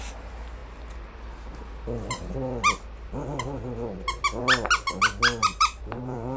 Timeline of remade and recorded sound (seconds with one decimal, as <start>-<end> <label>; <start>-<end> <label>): 0.0-5.4 recorded; 5.4-6.4 remade